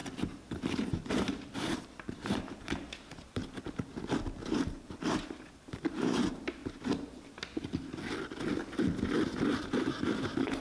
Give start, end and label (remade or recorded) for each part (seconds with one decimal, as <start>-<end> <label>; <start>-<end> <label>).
0.0-1.2 recorded; 1.2-3.4 remade; 3.4-4.4 recorded; 4.4-6.6 remade; 6.6-9.4 recorded; 9.4-10.6 remade

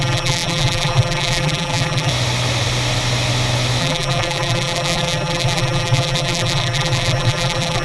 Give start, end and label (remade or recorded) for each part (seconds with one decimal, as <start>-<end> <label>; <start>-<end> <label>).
0.0-2.1 remade; 2.1-3.8 recorded; 3.8-7.8 remade

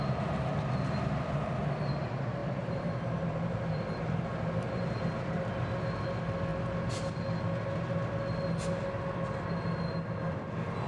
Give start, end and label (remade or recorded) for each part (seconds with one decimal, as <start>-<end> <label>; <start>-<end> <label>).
0.0-2.4 recorded; 2.4-5.7 remade; 5.7-10.9 recorded

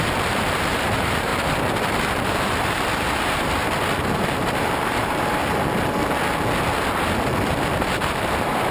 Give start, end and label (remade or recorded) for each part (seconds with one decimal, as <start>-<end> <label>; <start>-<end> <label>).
0.0-1.3 remade; 1.3-1.8 recorded; 1.8-3.6 remade; 3.6-4.1 recorded; 4.1-5.4 remade; 5.4-7.8 recorded; 7.8-8.7 remade